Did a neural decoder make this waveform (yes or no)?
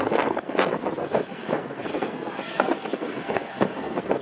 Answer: yes